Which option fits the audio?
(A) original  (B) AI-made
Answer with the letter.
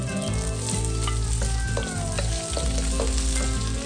A